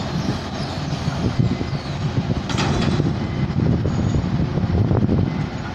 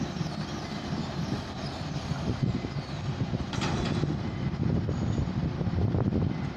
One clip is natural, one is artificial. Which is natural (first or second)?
first